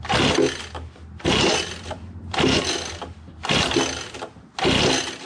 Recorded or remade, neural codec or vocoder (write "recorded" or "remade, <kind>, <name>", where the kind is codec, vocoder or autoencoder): recorded